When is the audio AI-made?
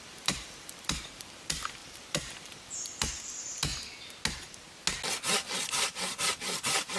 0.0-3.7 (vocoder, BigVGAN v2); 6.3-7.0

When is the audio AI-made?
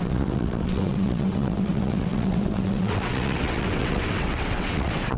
0.0-5.2 (vocoder, WaveNeXt)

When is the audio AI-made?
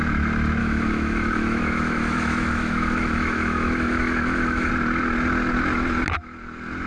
0.6-4.7 (autoencoder, DAC-VAE)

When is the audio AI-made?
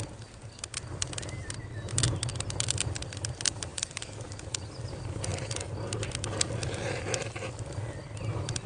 none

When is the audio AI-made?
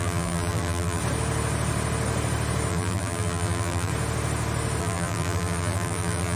0.0-1.0 (vocoder, BigVGAN v2); 2.7-3.9; 4.8-6.4